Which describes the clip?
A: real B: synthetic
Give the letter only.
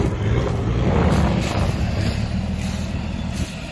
A